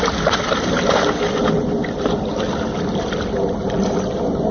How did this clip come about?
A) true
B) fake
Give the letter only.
A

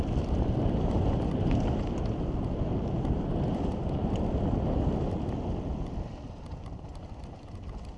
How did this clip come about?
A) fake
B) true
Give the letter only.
B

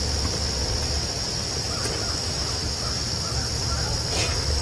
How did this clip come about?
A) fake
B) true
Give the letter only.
B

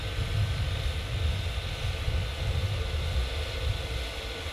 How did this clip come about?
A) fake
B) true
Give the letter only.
B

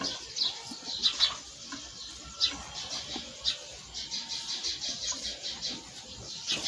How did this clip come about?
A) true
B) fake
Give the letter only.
A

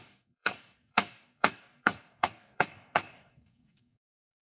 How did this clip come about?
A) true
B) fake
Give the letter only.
B